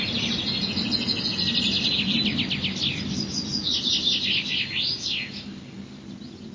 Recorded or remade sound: recorded